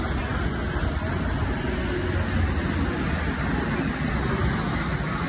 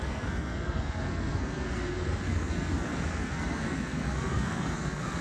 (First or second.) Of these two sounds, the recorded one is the first